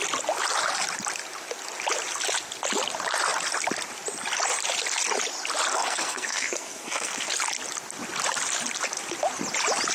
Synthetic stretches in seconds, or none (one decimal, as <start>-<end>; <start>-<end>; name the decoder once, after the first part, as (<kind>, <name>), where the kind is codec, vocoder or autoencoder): 5.7-7.3 (codec, SNAC)